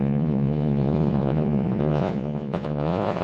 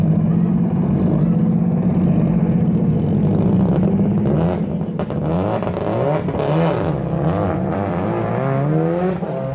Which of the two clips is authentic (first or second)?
second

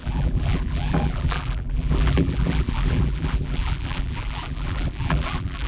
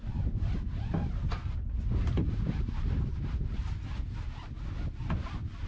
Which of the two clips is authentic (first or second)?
second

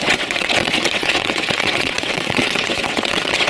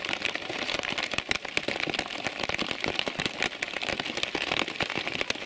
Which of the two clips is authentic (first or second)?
second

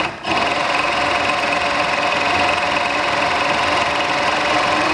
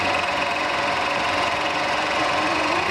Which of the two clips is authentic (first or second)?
first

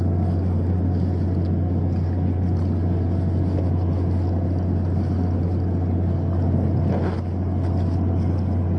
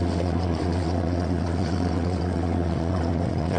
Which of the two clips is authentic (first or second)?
first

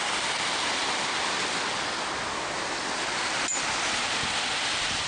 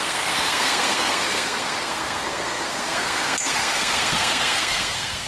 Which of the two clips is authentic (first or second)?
first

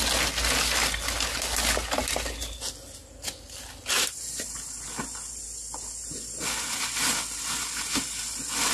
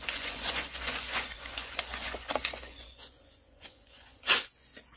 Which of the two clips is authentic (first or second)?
first